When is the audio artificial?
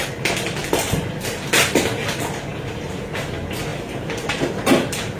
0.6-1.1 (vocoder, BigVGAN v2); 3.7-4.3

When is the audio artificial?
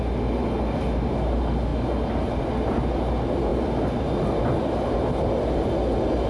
none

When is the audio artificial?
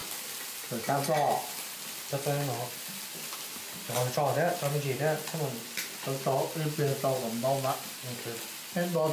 none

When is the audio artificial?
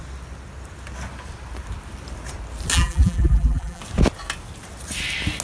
2.7-3.8 (vocoder, BigVGAN v2)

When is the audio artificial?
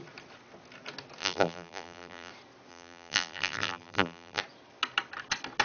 1.2-2.3 (vocoder, BigVGAN v2); 2.7-4.4